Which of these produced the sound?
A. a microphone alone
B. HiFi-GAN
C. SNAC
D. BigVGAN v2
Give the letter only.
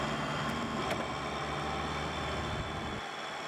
A